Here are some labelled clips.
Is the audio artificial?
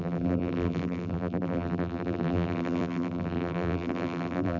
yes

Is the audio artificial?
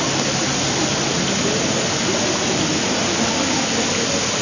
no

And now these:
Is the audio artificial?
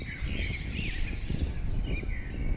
no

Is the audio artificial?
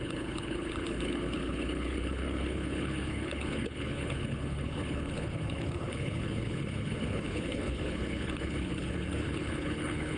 yes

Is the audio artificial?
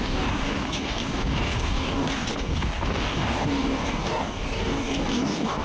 yes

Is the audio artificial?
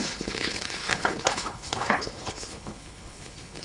yes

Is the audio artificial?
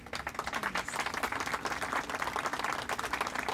no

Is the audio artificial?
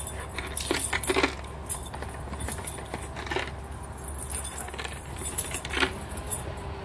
no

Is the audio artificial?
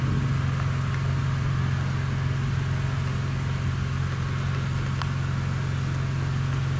no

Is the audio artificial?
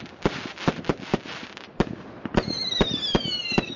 no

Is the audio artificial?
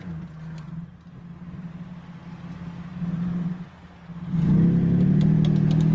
no